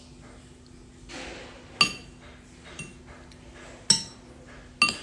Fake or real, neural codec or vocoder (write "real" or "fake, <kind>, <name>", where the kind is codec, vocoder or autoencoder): real